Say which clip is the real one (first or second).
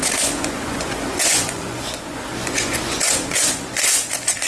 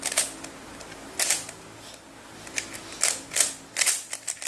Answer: second